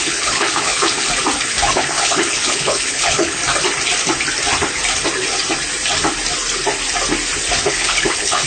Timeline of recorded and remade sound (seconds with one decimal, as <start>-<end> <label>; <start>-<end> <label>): 0.0-1.1 remade; 1.1-1.7 recorded; 1.7-3.4 remade; 3.4-7.7 recorded; 7.7-8.5 remade